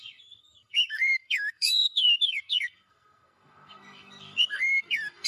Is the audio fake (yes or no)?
yes